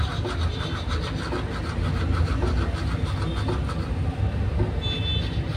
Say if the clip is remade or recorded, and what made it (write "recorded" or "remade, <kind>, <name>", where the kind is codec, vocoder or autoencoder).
recorded